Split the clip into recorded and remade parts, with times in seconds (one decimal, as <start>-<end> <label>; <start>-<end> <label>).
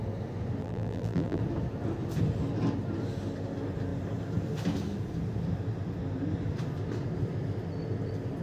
0.0-0.6 recorded; 0.6-1.4 remade; 1.4-8.4 recorded